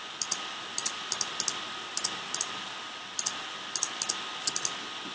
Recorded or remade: recorded